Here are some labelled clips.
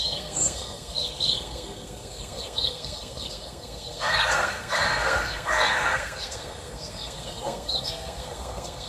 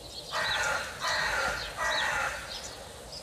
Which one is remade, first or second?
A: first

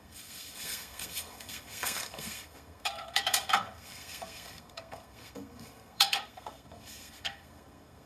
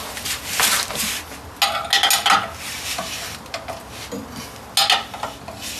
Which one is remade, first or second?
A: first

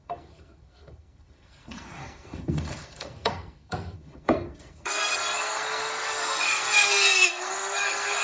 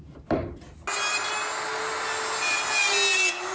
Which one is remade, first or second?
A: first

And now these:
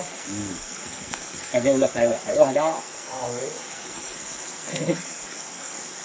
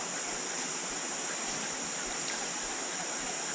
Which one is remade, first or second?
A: first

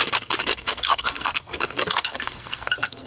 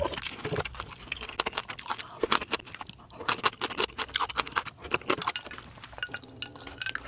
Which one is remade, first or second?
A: first